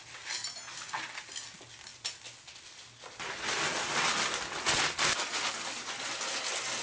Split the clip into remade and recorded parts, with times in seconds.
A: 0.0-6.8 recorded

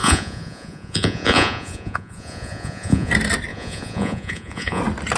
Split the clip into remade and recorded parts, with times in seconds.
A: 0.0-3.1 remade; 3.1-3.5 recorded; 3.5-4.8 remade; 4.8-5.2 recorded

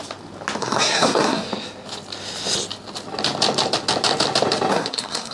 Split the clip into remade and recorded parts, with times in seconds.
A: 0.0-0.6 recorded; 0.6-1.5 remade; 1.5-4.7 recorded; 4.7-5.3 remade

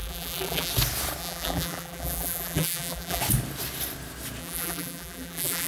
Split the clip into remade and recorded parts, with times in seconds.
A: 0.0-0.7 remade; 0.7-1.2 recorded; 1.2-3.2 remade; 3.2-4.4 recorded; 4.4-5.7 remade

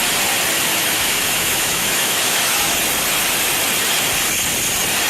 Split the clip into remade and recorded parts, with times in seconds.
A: 0.0-0.7 recorded; 0.7-2.7 remade; 2.7-5.1 recorded

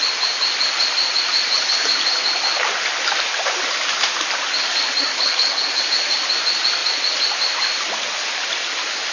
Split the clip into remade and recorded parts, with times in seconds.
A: 0.0-5.1 recorded; 5.1-5.8 remade; 5.8-9.1 recorded

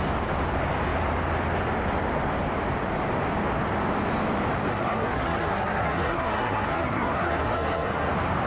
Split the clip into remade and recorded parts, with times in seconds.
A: 0.0-4.7 recorded; 4.7-8.1 remade; 8.1-8.5 recorded

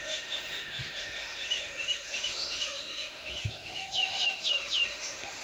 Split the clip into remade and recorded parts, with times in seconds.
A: 0.0-5.4 remade